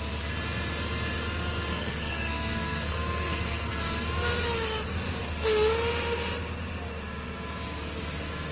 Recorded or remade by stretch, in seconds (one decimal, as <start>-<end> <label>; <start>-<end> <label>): 0.0-1.7 recorded; 1.7-3.8 remade; 3.8-8.5 recorded